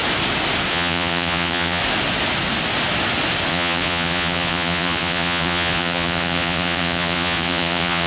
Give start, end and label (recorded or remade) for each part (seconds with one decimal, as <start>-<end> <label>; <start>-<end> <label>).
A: 0.0-0.7 recorded; 0.7-1.8 remade; 1.8-3.5 recorded; 3.5-8.1 remade